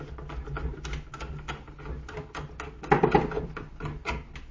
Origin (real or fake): real